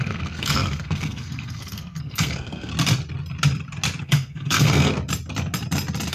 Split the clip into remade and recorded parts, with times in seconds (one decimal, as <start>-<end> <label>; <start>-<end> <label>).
0.0-2.7 remade; 2.7-4.0 recorded; 4.0-4.9 remade; 4.9-6.1 recorded